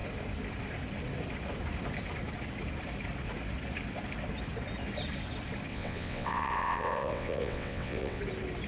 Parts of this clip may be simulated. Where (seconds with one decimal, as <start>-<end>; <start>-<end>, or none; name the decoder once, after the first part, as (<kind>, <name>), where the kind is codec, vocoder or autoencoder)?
5.7-8.2 (vocoder, WaveNeXt)